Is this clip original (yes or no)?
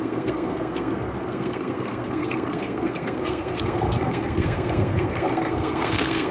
no